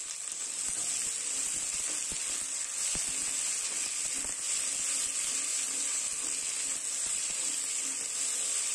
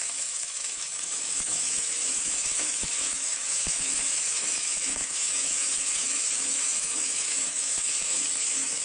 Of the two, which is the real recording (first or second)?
first